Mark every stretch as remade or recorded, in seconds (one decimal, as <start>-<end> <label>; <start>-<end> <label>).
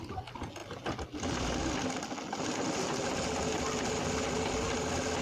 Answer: 0.0-5.2 recorded